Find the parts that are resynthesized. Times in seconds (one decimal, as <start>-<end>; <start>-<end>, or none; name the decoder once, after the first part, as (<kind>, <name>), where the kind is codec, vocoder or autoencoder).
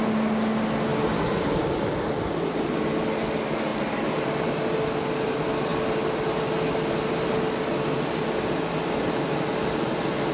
none